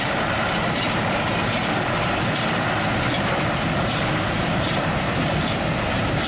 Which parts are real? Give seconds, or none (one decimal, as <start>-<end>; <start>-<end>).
1.6-3.3